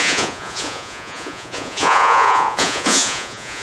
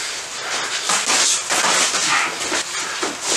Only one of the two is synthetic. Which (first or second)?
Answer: first